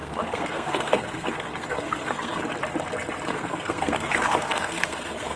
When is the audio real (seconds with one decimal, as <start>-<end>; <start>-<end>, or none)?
2.4-3.3